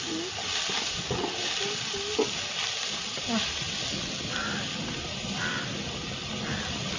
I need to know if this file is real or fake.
real